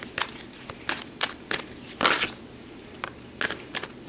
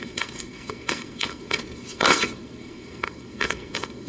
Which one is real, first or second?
first